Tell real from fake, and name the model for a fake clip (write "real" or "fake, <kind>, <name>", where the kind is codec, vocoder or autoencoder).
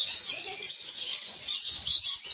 fake, vocoder, Vocos